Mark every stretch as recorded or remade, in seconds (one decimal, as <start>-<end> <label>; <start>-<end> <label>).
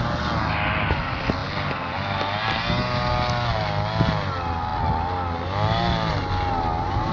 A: 0.0-7.1 recorded